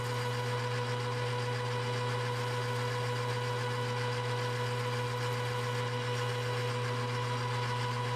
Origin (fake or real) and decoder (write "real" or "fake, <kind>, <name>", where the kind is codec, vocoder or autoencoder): real